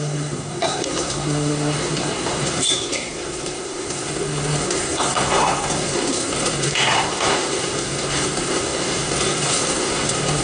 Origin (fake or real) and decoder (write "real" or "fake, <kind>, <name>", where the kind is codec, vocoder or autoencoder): fake, codec, SNAC